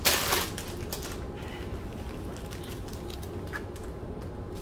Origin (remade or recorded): recorded